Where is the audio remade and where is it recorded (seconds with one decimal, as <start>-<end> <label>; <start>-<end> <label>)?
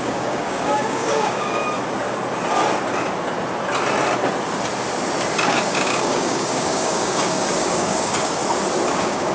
0.0-1.6 remade; 1.6-5.4 recorded; 5.4-8.4 remade; 8.4-8.9 recorded; 8.9-9.3 remade